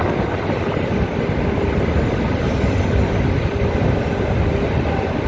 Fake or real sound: real